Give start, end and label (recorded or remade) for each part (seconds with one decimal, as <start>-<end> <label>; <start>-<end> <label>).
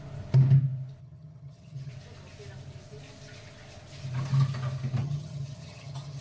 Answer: 0.0-1.0 recorded; 1.0-1.9 remade; 1.9-5.0 recorded; 5.0-6.2 remade